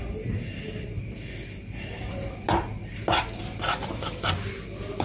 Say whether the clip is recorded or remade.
recorded